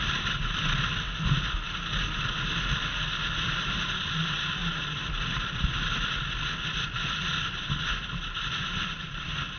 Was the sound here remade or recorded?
recorded